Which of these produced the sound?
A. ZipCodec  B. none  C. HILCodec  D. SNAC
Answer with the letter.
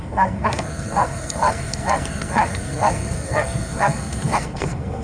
D